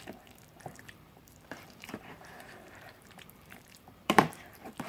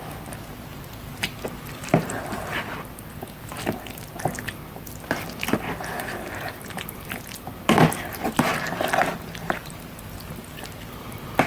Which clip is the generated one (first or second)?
first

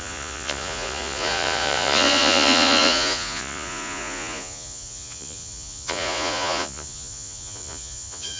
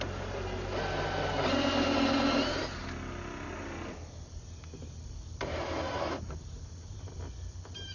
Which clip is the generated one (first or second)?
first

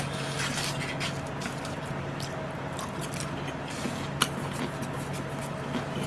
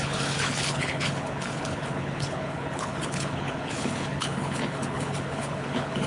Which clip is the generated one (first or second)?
second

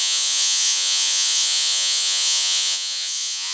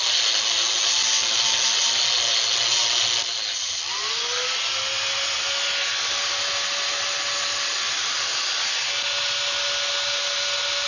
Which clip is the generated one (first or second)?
first